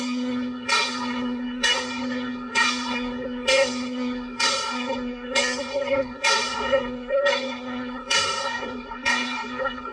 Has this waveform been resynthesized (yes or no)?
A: yes